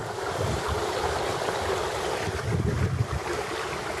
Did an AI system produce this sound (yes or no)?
no